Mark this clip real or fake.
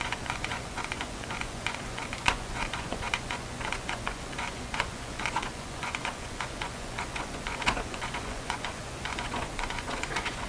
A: fake